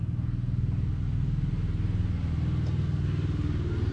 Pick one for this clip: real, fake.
real